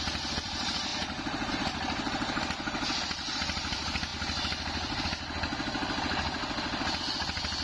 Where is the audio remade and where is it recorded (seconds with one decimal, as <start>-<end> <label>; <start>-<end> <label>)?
0.0-4.1 remade; 4.1-7.0 recorded; 7.0-7.6 remade

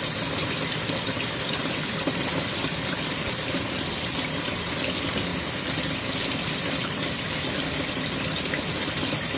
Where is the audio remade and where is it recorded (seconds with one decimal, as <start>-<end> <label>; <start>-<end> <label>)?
0.0-9.4 remade